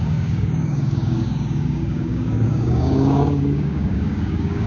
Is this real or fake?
fake